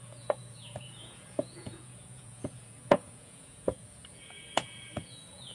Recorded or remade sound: remade